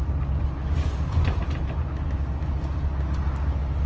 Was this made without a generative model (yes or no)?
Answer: yes